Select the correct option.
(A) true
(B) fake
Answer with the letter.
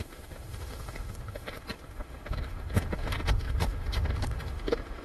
B